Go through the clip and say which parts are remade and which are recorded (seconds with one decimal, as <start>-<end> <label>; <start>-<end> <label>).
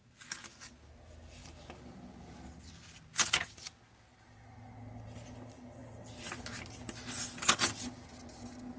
0.0-8.8 recorded